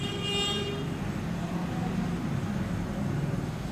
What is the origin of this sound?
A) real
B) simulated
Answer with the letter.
A